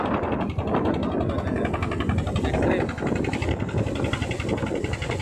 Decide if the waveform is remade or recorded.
recorded